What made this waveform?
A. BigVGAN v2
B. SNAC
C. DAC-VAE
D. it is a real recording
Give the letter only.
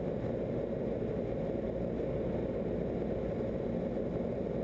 D